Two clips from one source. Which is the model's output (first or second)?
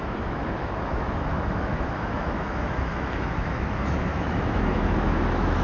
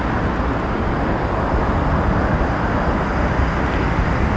first